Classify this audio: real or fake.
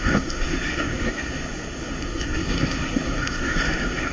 fake